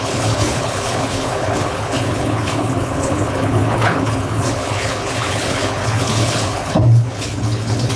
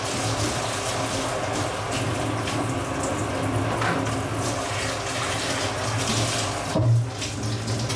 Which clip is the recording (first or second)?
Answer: second